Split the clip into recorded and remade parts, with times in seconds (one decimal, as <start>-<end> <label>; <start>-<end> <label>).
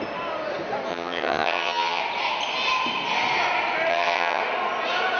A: 0.0-0.9 recorded; 0.9-2.0 remade; 2.0-3.9 recorded; 3.9-4.4 remade; 4.4-5.2 recorded